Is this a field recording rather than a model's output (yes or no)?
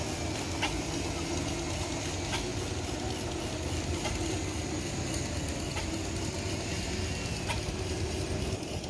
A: yes